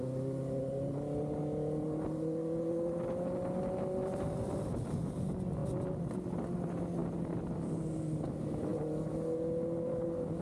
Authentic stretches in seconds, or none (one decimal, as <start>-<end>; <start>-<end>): 0.0-10.4